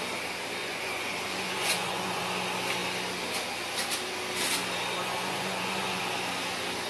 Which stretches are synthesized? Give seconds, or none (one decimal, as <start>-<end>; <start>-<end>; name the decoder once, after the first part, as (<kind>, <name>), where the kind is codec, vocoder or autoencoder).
0.6-2.2 (vocoder, Vocos); 5.0-6.0